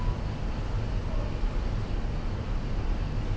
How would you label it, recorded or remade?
recorded